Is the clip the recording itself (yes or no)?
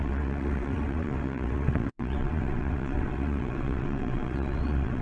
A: no